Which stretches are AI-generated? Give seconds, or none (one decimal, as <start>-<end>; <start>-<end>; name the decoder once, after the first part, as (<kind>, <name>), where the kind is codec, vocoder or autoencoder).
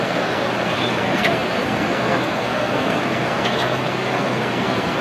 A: 0.0-5.0 (codec, SNAC)